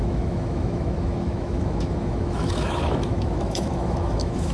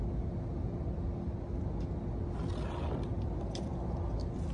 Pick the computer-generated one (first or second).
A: first